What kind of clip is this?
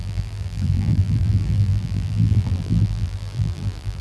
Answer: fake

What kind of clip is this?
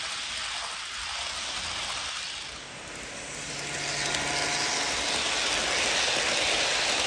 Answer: real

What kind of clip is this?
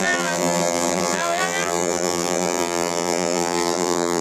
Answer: fake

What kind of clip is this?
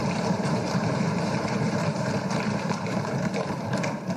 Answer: fake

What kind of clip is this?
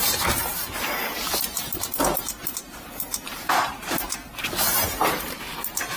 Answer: fake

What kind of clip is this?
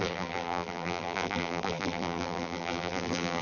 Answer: fake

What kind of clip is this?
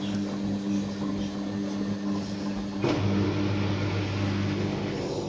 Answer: real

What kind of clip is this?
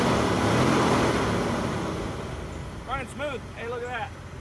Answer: real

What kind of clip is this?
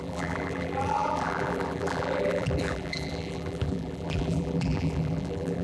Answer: fake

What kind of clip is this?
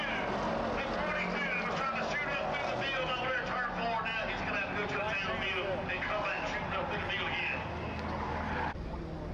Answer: real